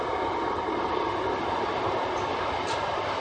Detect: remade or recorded recorded